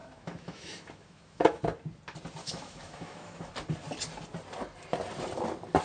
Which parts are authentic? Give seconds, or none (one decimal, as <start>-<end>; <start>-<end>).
1.6-2.4; 3.5-5.8